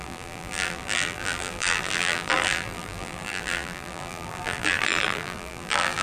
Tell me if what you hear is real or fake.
fake